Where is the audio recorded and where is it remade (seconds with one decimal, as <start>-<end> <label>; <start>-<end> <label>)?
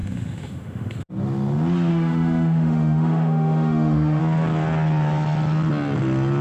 0.0-1.1 remade; 1.1-1.9 recorded; 1.9-4.2 remade; 4.2-6.4 recorded